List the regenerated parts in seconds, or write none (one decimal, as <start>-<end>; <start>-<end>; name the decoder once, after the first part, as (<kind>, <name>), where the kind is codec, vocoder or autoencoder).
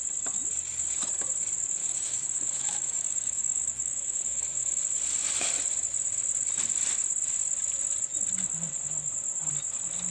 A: 1.8-4.8 (autoencoder, DAC-VAE)